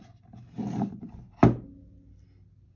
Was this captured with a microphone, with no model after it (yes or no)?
yes